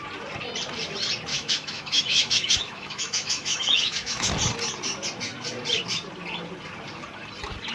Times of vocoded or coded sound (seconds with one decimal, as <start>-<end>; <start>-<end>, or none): 1.3-4.3